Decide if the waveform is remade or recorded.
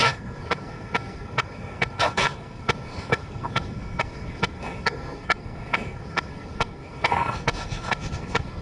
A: remade